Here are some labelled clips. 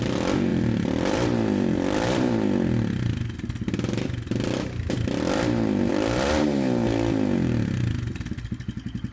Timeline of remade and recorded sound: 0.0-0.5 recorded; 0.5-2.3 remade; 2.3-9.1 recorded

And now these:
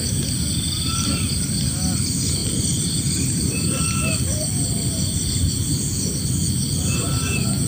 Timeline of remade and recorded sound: 0.0-2.4 recorded; 2.4-3.4 remade; 3.4-7.7 recorded